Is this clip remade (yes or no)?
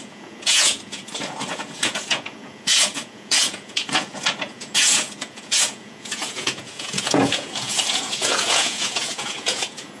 yes